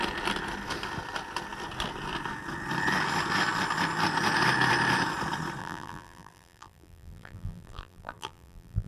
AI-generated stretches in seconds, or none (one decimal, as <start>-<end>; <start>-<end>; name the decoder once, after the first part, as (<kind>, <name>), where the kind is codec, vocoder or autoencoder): 5.6-8.9 (vocoder, BigVGAN v2)

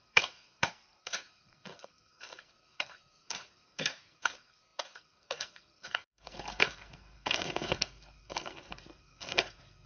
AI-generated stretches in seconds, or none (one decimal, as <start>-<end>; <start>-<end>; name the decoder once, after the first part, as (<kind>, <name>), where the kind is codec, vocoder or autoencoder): 0.0-9.9 (codec, SNAC)

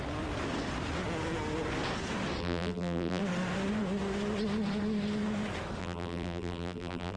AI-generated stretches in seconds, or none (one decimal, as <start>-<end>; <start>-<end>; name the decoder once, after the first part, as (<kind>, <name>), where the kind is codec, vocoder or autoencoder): 2.4-3.2 (vocoder, BigVGAN v2); 5.8-7.2